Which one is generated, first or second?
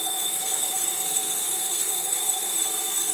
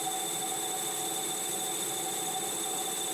first